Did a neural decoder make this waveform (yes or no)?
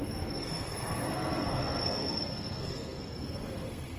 yes